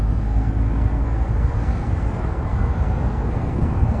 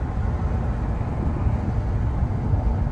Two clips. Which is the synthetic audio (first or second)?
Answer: first